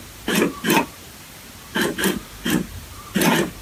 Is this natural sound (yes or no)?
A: no